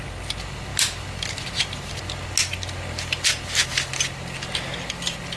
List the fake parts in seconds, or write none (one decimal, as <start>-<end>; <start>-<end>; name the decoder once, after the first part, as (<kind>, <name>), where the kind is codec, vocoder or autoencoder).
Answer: none